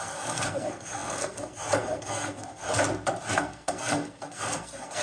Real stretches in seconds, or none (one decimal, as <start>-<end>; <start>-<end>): 2.6-3.3

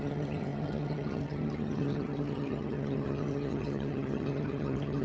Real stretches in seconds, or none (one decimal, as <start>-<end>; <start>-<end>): none

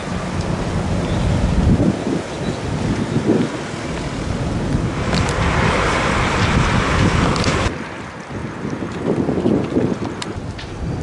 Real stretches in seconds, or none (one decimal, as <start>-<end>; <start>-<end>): 0.0-11.0

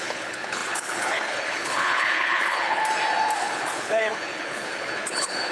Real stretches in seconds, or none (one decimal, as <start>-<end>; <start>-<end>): 2.8-3.4